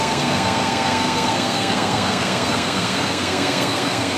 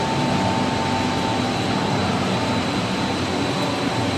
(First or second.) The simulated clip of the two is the first